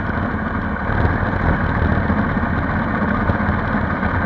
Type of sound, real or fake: real